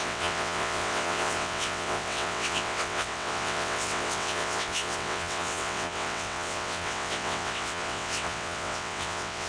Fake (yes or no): yes